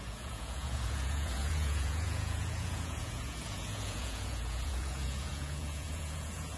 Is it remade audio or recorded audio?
remade